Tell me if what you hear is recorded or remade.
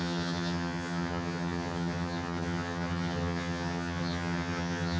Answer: remade